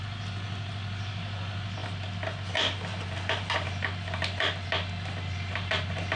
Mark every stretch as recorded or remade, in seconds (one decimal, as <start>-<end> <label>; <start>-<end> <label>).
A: 0.0-6.2 recorded